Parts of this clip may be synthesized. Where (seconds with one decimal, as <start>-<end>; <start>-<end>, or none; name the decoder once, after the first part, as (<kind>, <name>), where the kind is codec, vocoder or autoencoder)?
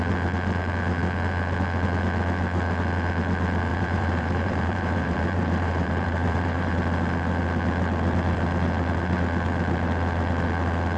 3.7-6.7 (vocoder, BigVGAN v2)